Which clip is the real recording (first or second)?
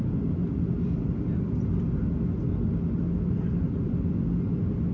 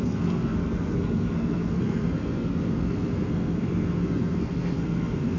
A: first